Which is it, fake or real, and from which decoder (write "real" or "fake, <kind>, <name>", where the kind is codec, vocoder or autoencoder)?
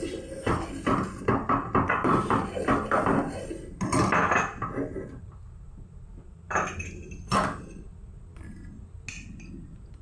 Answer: real